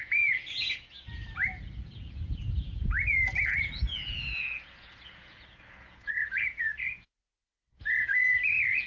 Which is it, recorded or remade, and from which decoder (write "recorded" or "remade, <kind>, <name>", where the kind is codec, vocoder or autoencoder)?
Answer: remade, vocoder, Vocos